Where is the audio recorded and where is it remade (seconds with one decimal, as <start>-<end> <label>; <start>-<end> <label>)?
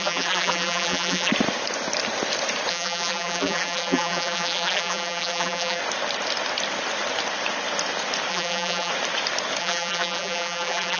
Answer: 0.0-1.3 remade; 1.3-2.7 recorded; 2.7-5.8 remade; 5.8-8.3 recorded; 8.3-8.9 remade; 8.9-9.6 recorded; 9.6-11.0 remade